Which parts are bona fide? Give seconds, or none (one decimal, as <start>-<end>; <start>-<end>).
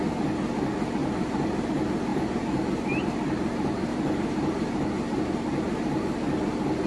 0.0-1.0; 1.7-2.1; 3.0-3.9; 5.2-6.9